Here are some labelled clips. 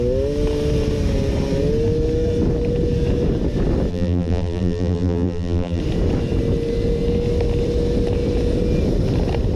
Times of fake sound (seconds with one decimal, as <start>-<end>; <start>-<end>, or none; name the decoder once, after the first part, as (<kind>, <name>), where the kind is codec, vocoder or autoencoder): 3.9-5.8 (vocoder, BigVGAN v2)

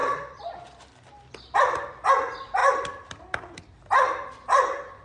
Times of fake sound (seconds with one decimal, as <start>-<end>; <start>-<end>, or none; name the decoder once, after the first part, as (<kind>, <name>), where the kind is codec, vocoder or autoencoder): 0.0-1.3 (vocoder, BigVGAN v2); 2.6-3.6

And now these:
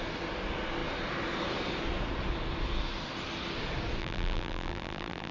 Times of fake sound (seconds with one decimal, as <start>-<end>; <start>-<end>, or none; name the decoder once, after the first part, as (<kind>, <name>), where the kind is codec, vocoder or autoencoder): 4.0-5.3 (vocoder, BigVGAN v2)

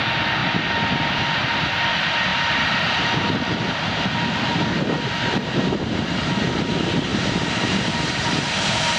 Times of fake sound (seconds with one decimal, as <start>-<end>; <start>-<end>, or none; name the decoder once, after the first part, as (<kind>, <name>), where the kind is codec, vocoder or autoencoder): 0.4-1.8 (vocoder, BigVGAN v2); 7.1-9.0

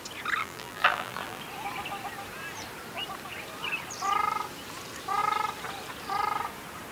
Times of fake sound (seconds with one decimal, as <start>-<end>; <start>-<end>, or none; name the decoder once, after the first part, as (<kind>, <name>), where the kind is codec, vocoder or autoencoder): 0.4-1.4 (vocoder, BigVGAN v2)